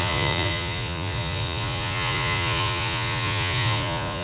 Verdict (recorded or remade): remade